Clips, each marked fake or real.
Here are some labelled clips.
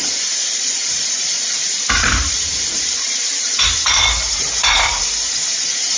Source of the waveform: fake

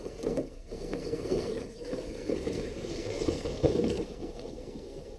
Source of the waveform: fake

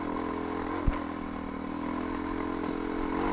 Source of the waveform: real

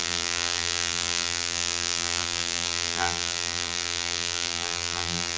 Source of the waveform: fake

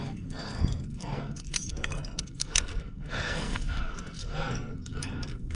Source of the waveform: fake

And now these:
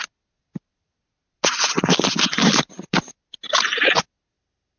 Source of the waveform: real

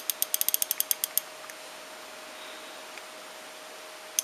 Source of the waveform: real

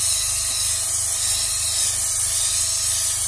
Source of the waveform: real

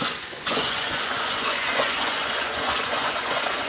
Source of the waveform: fake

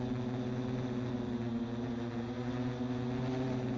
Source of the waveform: real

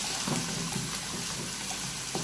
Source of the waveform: real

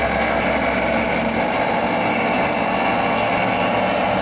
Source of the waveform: real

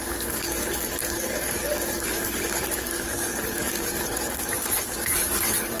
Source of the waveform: fake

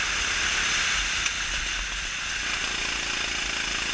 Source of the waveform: real